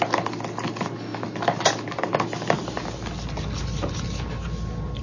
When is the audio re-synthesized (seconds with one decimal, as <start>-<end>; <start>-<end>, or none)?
none